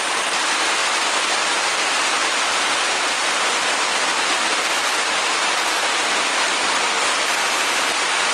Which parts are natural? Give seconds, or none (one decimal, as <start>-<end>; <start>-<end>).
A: 0.0-0.8; 1.3-2.2; 6.4-8.3